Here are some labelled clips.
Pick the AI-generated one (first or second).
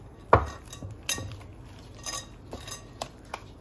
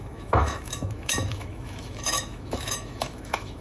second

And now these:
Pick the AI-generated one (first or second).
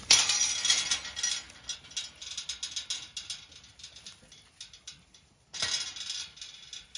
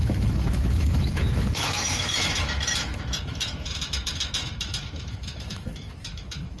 second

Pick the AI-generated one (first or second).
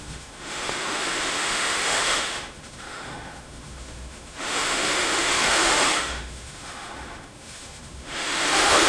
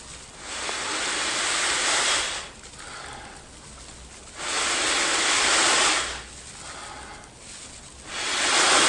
first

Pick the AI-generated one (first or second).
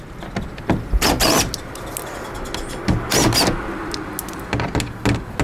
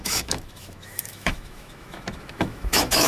second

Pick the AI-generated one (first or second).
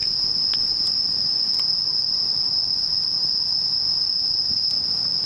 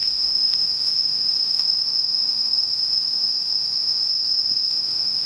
second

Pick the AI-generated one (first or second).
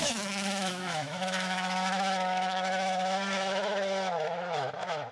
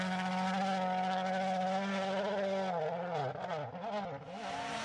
first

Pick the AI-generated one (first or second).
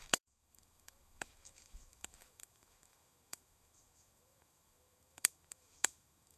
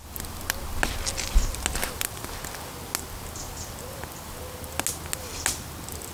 first